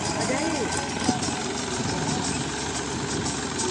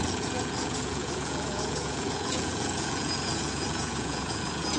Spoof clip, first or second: second